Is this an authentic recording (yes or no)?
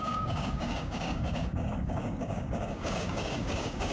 no